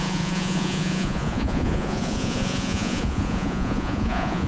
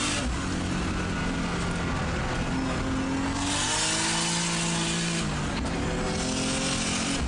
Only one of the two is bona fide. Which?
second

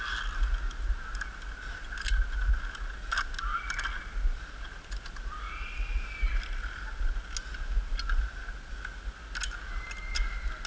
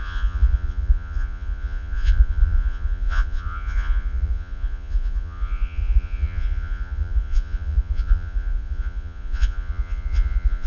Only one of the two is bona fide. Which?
first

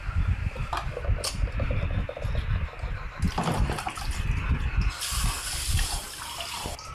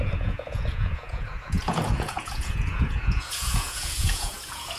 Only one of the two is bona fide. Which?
first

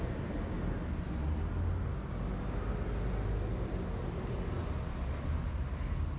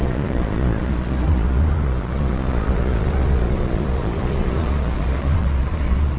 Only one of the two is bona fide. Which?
first